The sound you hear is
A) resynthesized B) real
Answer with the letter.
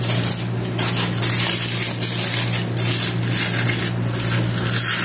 B